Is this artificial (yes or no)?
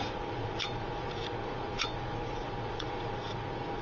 yes